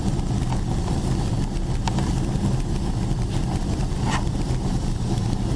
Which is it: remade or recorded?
recorded